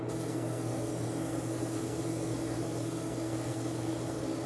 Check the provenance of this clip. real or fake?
fake